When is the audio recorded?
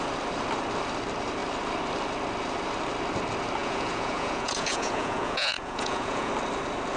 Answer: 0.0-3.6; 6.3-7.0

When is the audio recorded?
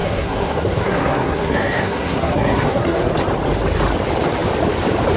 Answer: 3.1-5.2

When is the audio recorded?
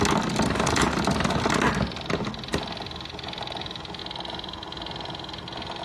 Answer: 0.0-5.8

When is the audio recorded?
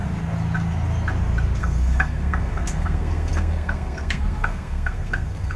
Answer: 0.0-1.6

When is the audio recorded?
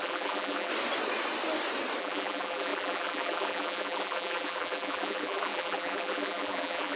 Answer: 0.7-2.0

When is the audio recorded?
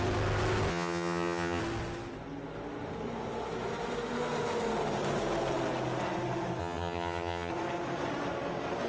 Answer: 0.0-0.7; 1.6-6.6; 7.5-8.9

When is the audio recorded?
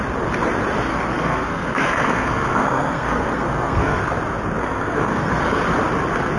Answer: 0.0-0.9; 4.0-4.6; 5.4-6.4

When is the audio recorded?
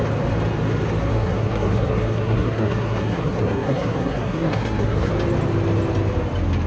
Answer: 0.0-1.1; 5.1-6.7